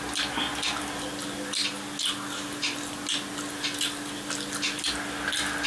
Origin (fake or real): real